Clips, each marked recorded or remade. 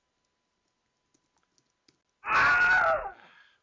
recorded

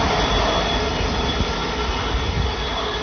recorded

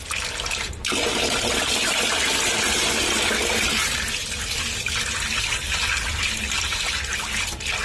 recorded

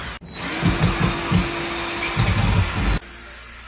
recorded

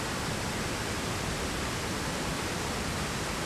recorded